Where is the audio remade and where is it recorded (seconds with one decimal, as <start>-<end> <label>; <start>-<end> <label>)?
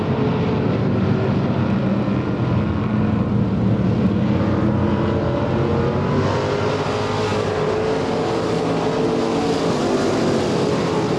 0.0-11.2 recorded